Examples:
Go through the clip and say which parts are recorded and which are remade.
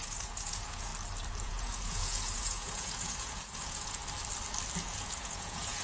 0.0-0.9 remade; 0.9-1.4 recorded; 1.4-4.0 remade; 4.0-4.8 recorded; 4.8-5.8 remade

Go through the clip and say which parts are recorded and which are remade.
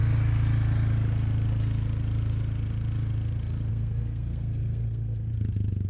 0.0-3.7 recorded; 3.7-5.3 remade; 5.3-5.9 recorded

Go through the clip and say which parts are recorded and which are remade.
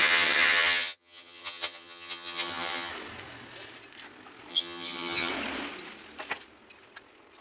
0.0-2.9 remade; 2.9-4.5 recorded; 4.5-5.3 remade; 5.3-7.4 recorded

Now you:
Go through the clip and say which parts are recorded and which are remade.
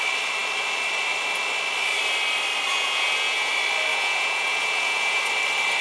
0.0-2.7 recorded; 2.7-3.5 remade; 3.5-3.9 recorded; 3.9-5.2 remade; 5.2-5.8 recorded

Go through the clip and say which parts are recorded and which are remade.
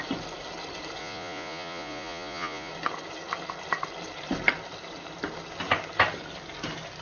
0.0-1.0 recorded; 1.0-2.7 remade; 2.7-7.0 recorded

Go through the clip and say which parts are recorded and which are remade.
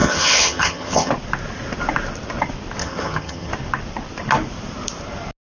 0.0-1.1 remade; 1.1-2.8 recorded; 2.8-3.5 remade; 3.5-5.5 recorded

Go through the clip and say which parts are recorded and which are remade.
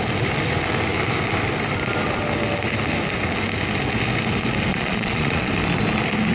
0.0-4.7 recorded; 4.7-5.5 remade; 5.5-6.3 recorded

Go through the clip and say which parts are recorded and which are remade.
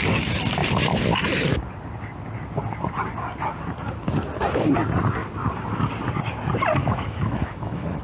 0.0-6.8 recorded; 6.8-8.0 remade